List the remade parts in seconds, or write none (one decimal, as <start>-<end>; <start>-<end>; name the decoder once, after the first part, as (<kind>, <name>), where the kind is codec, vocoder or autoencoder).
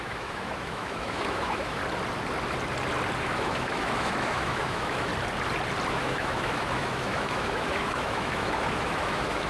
0.0-1.8 (autoencoder, DAC-VAE); 3.2-5.1; 5.9-9.5